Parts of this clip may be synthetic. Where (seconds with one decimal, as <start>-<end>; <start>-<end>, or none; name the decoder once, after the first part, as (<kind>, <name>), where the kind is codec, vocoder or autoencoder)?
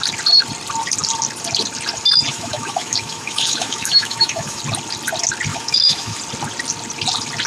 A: 2.3-4.6 (autoencoder, DAC-VAE); 5.5-6.2